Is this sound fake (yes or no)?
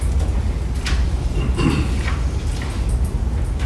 no